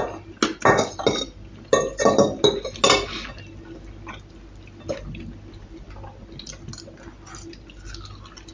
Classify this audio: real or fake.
real